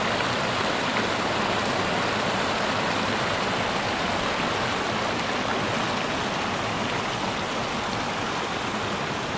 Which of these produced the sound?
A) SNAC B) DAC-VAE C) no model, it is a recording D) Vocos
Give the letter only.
C